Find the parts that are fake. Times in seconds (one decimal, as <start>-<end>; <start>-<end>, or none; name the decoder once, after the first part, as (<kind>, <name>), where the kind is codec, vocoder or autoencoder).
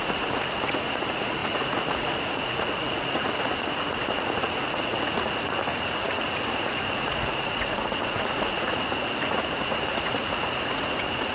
0.0-11.3 (vocoder, Vocos)